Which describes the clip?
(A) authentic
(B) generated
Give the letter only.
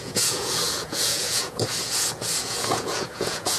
B